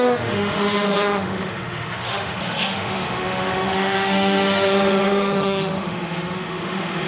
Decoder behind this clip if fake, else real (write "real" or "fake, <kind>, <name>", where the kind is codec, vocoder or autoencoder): fake, autoencoder, DAC-VAE